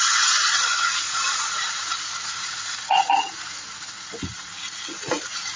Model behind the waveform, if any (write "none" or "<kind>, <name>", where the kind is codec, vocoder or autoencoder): vocoder, Vocos